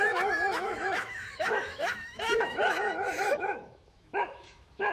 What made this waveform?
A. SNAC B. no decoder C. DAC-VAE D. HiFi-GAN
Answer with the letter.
C